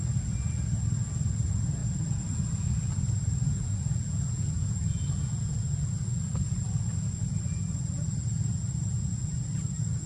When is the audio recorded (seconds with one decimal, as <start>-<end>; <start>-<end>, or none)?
0.0-10.1